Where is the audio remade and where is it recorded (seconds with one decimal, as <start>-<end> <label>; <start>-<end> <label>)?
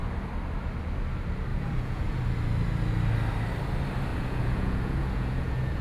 0.0-1.5 recorded; 1.5-2.2 remade; 2.2-4.1 recorded; 4.1-5.8 remade